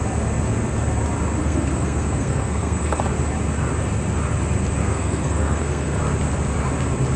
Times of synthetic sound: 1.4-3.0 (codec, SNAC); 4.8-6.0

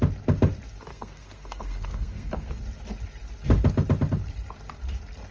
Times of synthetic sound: 0.9-2.6 (codec, SNAC)

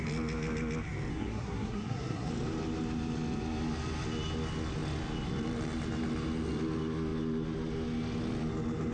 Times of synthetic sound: 1.1-2.3 (codec, SNAC)